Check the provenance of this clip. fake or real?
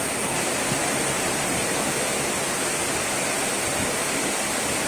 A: real